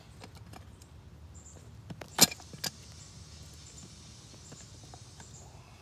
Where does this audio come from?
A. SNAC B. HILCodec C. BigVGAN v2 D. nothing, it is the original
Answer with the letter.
D